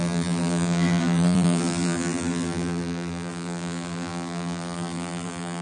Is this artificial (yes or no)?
yes